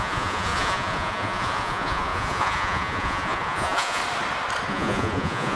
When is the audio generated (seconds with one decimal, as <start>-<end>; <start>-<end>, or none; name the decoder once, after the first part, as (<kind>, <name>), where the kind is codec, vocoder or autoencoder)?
0.0-4.0 (vocoder, Vocos); 4.7-5.6